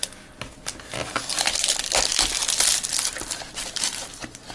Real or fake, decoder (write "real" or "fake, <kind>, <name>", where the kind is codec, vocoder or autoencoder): real